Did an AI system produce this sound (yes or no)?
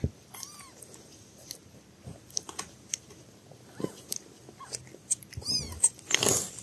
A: yes